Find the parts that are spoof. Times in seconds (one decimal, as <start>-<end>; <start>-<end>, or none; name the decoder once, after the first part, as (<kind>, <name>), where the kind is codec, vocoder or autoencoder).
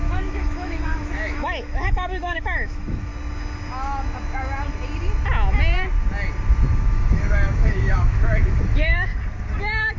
0.0-3.1 (autoencoder, DAC-VAE); 6.8-9.1; 9.6-10.0